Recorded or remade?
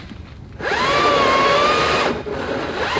recorded